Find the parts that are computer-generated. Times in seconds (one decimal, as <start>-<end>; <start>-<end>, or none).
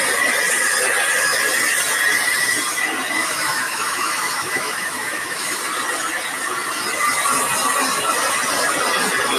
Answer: 3.2-5.6